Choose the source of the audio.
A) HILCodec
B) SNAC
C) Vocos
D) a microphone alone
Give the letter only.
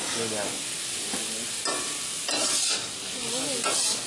D